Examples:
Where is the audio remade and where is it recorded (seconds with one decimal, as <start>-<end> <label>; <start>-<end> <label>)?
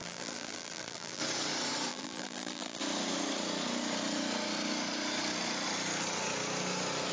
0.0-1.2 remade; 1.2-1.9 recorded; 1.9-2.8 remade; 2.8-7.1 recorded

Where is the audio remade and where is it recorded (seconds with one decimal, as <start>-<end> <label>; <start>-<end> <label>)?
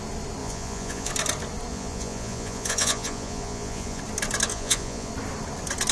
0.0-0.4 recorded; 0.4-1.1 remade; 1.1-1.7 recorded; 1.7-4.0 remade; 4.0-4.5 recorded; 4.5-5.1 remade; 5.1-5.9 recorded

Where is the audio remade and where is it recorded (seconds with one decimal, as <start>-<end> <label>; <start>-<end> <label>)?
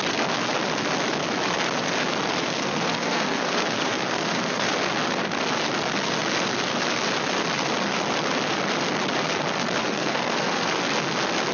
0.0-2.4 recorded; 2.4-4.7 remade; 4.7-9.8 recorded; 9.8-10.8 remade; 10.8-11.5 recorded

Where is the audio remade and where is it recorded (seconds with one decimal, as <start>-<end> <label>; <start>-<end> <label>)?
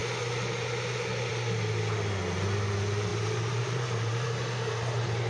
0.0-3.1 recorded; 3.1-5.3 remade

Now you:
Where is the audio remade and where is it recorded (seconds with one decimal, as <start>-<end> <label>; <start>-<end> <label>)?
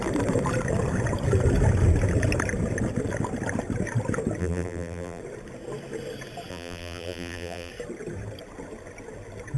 0.0-4.4 recorded; 4.4-5.2 remade; 5.2-6.5 recorded; 6.5-7.7 remade; 7.7-9.6 recorded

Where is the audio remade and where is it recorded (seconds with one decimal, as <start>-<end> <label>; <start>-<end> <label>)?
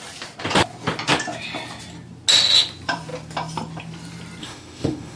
0.0-4.4 recorded; 4.4-5.2 remade